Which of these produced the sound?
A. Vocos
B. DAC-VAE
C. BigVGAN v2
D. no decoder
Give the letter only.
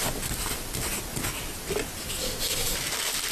D